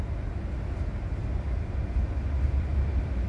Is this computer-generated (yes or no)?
no